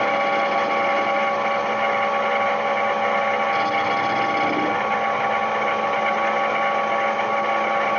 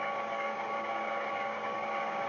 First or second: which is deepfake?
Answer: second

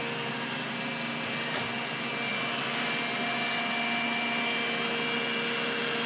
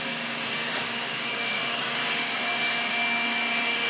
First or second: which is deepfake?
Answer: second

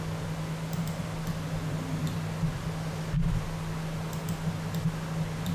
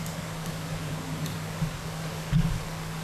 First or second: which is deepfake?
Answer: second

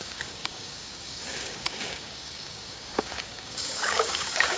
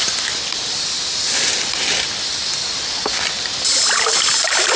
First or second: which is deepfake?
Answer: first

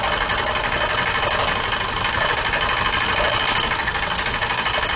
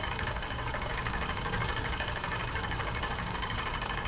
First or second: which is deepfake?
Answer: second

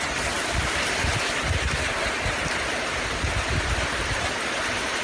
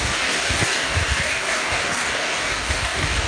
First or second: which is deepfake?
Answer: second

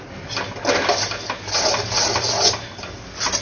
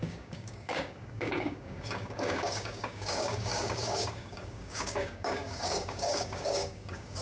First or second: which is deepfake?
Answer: second